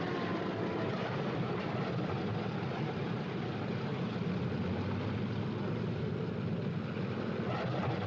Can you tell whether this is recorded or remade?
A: recorded